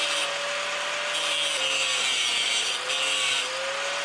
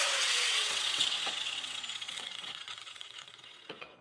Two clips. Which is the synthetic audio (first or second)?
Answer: second